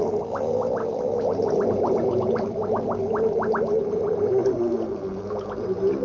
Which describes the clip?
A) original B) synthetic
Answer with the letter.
A